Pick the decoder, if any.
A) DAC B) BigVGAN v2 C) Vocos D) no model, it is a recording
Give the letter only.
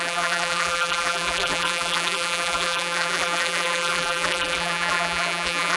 B